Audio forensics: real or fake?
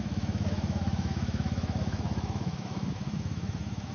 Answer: fake